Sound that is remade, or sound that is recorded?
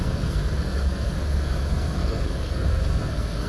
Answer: remade